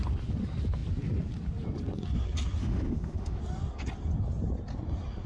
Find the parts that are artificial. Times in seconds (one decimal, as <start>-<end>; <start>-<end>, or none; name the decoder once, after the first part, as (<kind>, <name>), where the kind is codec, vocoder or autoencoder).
2.6-3.4 (autoencoder, DAC-VAE)